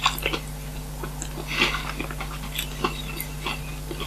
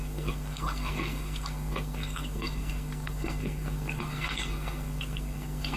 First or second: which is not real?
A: second